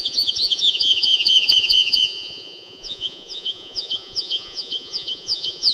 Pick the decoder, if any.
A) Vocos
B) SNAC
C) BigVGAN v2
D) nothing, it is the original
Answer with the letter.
A